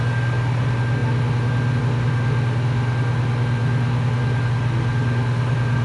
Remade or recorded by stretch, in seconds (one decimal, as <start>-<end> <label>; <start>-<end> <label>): 0.0-5.8 recorded